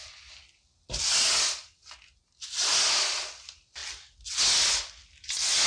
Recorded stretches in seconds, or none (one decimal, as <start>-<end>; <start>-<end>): 0.0-5.7